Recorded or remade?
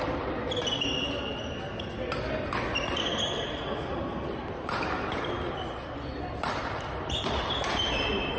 recorded